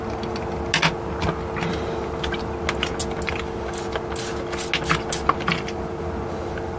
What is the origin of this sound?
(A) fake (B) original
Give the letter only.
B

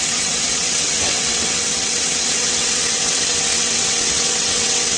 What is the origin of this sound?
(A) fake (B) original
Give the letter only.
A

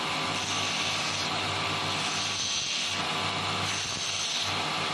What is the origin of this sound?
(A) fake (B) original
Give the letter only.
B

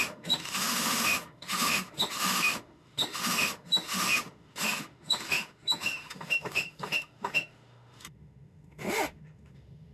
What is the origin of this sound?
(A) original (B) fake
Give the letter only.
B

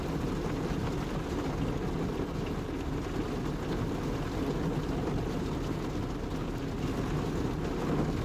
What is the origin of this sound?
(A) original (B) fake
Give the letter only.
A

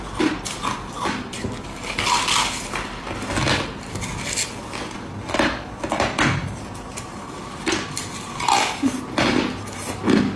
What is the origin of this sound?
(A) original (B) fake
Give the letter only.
A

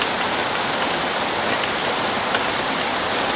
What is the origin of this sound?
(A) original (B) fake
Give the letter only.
A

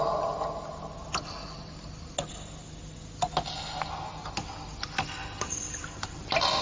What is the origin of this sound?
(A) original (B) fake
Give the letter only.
A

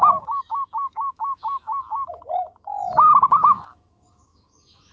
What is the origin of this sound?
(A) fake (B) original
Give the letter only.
A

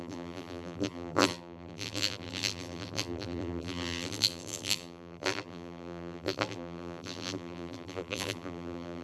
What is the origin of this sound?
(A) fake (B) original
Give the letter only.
A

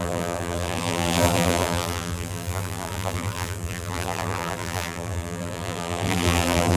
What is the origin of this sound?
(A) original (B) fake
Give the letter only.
B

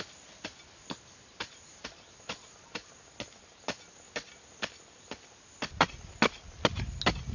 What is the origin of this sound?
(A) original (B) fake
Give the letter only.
A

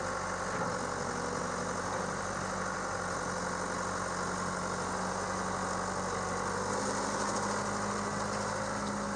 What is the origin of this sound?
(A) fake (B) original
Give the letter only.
B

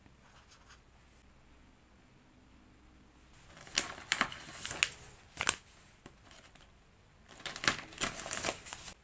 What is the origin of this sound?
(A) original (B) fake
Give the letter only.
A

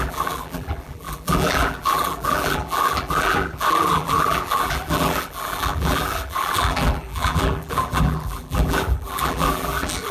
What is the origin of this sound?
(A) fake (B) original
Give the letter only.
A